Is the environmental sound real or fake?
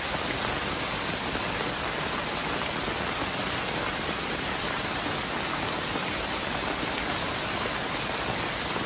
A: real